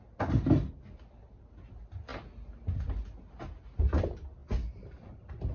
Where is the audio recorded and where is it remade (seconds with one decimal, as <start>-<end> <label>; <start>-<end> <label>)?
0.0-4.4 recorded; 4.4-5.5 remade